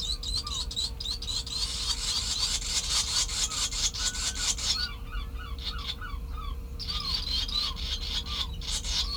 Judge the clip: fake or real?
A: real